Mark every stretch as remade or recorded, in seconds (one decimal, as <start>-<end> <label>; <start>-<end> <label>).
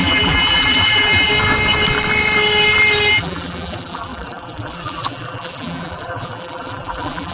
0.0-1.3 remade; 1.3-3.1 recorded; 3.1-7.3 remade